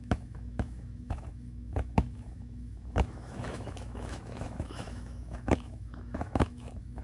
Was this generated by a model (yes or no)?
yes